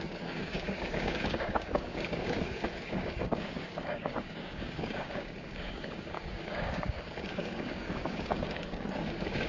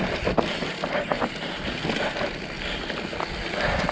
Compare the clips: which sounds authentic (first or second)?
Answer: second